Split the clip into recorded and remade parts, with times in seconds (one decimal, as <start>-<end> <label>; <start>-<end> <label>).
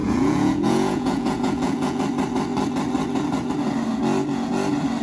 0.0-2.0 remade; 2.0-5.0 recorded